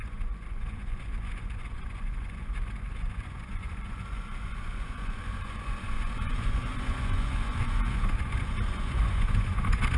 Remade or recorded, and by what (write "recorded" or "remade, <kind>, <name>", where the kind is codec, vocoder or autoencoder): remade, vocoder, Vocos